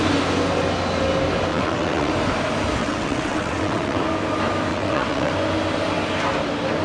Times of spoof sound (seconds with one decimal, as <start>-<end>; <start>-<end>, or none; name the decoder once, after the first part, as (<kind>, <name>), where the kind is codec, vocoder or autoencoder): 1.5-2.1 (vocoder, WaveNeXt); 2.8-4.0; 4.7-5.3